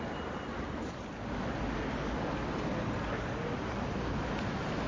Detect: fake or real real